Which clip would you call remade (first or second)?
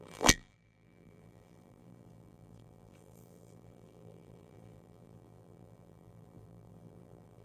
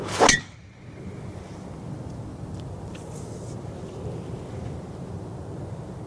first